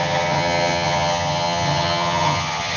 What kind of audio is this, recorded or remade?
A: remade